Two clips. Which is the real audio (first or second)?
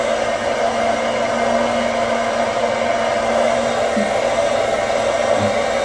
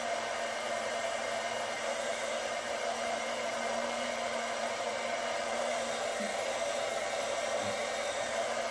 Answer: first